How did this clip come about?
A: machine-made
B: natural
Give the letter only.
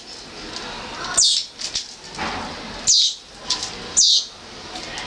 B